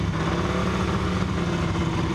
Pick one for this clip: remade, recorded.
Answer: recorded